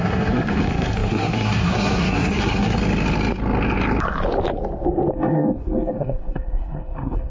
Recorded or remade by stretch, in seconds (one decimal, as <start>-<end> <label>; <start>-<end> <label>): 0.0-2.8 remade; 2.8-5.1 recorded; 5.1-7.3 remade